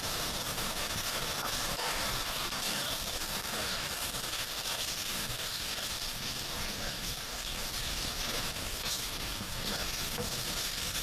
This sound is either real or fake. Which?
fake